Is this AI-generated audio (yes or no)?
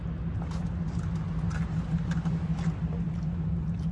no